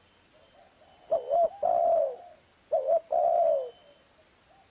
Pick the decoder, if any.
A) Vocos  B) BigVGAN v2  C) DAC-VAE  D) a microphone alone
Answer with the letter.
D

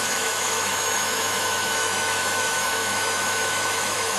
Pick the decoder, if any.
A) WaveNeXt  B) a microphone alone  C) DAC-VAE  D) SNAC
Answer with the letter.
C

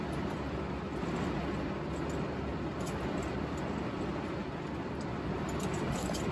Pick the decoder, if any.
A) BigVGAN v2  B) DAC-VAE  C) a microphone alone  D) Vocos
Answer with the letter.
C